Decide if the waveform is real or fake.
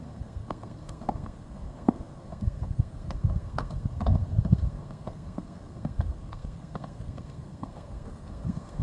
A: fake